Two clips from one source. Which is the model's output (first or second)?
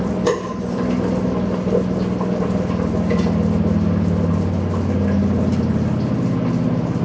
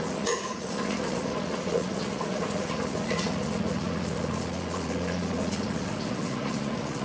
second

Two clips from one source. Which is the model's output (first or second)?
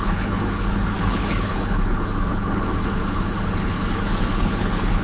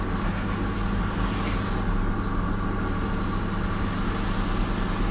first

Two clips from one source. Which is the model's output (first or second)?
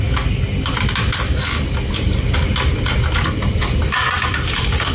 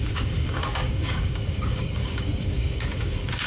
second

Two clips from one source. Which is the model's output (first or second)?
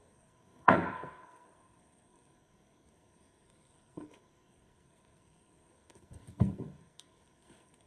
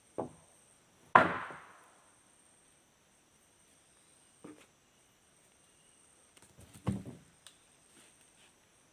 first